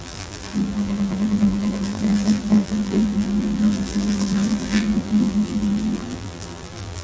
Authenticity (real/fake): fake